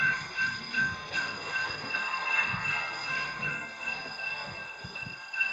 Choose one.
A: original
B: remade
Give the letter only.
B